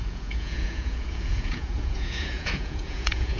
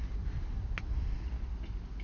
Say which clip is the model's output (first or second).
first